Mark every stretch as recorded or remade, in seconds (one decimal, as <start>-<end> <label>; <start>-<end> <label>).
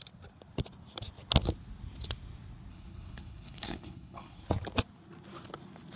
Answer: 0.0-2.7 recorded; 2.7-4.4 remade; 4.4-6.0 recorded